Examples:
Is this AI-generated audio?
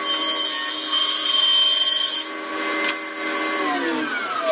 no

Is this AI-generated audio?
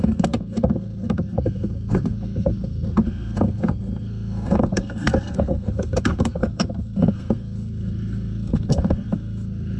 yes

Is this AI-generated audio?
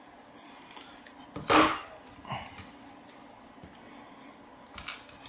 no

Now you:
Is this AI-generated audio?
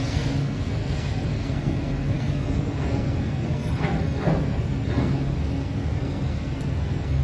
yes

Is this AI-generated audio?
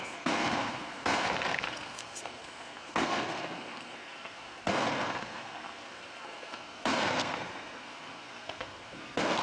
yes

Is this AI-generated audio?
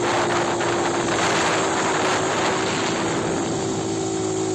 no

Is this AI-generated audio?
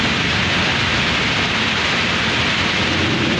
no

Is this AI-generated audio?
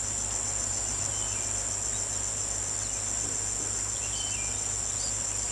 no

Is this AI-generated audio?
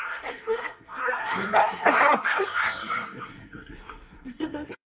yes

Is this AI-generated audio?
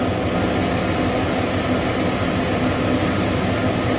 no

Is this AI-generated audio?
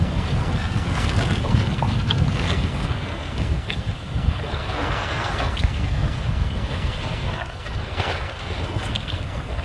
yes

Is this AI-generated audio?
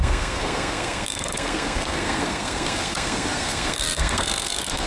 yes